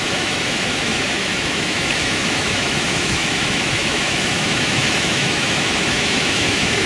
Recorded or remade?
remade